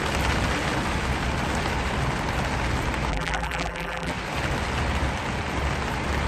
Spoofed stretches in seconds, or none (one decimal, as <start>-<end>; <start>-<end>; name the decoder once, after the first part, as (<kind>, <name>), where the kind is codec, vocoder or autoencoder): 3.1-4.1 (vocoder, BigVGAN v2)